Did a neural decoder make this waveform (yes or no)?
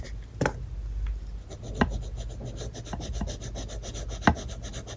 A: no